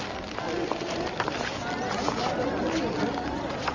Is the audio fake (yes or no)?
no